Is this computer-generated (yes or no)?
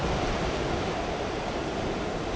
no